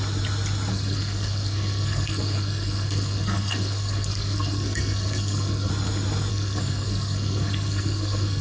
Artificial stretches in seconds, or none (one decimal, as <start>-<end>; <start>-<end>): 0.7-5.7; 6.3-8.4